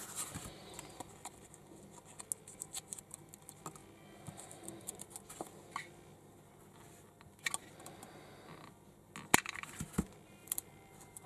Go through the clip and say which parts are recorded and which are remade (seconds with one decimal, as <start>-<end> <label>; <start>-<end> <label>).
0.0-0.6 recorded; 0.6-1.4 remade; 1.4-7.6 recorded; 7.6-8.2 remade; 8.2-10.4 recorded; 10.4-11.3 remade